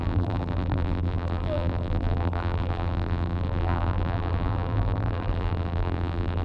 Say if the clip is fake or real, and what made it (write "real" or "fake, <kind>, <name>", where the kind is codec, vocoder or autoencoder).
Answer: fake, vocoder, BigVGAN v2